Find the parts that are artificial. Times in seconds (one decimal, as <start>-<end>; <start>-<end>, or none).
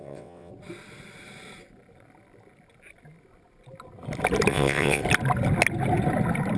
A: 0.0-0.5; 4.5-5.0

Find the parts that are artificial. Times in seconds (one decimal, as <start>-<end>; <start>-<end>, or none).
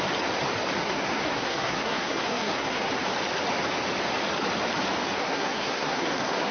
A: 0.8-2.9; 5.2-6.5